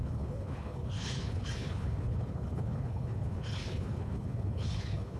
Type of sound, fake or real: fake